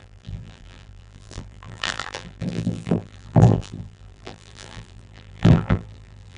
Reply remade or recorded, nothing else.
remade